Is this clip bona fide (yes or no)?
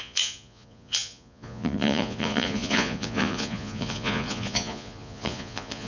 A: no